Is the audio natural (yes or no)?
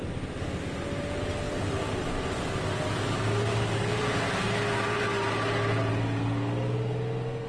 yes